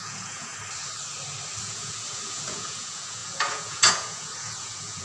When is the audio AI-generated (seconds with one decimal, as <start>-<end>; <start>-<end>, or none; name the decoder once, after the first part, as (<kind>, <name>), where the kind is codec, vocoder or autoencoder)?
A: 0.0-0.5 (vocoder, Vocos); 1.6-5.0